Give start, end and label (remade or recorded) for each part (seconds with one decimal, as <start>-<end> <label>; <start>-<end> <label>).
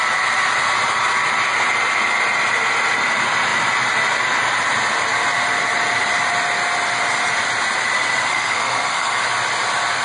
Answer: 0.0-8.3 recorded; 8.3-9.2 remade; 9.2-10.0 recorded